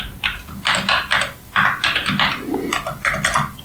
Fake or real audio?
real